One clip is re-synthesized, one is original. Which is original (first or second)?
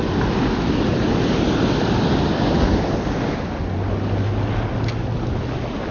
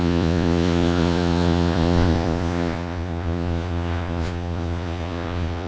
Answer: first